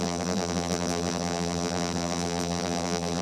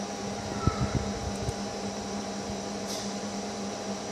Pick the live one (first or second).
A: second